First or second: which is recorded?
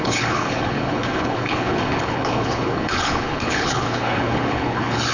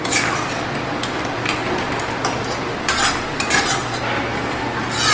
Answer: second